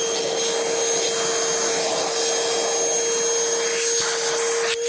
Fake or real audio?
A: real